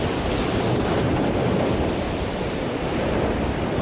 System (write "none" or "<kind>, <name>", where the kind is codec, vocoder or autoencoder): none